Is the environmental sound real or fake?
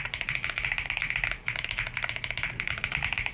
fake